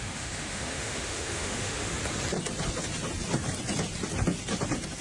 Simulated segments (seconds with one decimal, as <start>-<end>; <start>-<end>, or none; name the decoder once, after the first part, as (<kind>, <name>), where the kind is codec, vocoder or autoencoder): 0.0-1.9 (autoencoder, DAC-VAE)